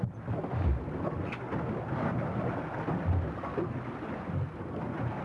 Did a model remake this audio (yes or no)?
no